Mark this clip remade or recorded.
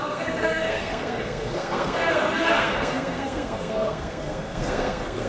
remade